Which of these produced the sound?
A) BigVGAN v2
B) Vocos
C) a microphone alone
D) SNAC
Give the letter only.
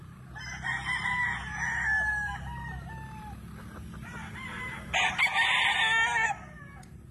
C